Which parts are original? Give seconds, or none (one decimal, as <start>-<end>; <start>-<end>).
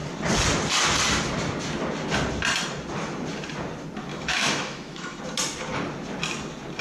0.0-4.1; 5.2-6.8